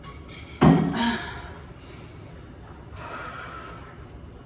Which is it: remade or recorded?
recorded